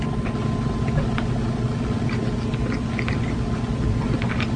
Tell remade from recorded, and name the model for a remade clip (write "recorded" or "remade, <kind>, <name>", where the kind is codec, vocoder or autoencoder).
recorded